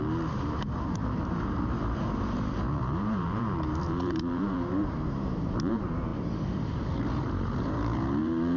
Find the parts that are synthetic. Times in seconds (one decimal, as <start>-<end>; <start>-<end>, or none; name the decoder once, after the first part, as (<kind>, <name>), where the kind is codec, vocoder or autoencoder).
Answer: 0.0-8.6 (vocoder, BigVGAN v2)